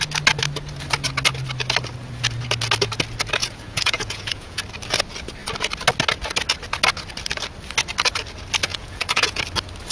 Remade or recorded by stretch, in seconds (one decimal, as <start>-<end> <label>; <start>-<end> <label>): 0.0-3.4 recorded; 3.4-4.6 remade; 4.6-8.7 recorded; 8.7-9.4 remade; 9.4-9.9 recorded